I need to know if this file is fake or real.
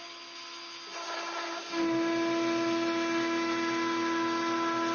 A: real